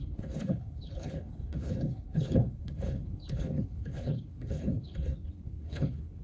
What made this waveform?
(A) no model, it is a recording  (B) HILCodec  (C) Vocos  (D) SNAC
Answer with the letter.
B